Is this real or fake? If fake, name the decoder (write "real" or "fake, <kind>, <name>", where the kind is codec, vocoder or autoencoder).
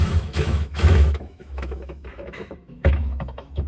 fake, autoencoder, DAC-VAE